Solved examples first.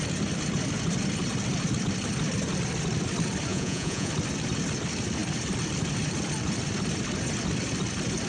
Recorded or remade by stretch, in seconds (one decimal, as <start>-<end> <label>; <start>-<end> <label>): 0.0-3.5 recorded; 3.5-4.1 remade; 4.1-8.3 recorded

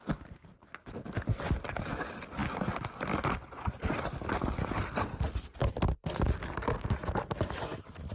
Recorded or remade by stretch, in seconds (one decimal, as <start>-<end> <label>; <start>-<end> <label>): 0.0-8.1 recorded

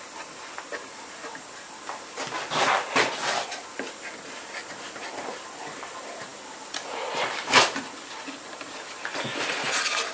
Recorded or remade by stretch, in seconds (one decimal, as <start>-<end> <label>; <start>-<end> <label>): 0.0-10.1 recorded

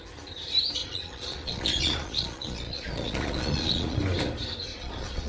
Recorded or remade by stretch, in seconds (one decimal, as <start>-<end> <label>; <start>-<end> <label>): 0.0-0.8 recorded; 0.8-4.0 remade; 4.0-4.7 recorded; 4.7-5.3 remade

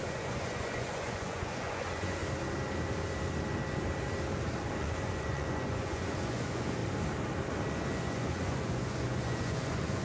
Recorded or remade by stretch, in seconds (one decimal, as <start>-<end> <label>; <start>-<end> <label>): 0.0-2.2 remade; 2.2-4.8 recorded; 4.8-6.8 remade; 6.8-7.7 recorded; 7.7-10.0 remade

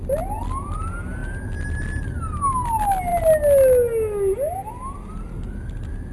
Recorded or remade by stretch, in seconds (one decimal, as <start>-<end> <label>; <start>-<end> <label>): 0.0-6.1 recorded